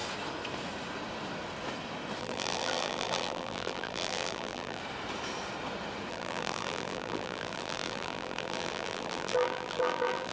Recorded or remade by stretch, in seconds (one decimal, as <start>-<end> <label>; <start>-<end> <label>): 0.0-2.2 recorded; 2.2-4.8 remade; 4.8-6.1 recorded; 6.1-10.3 remade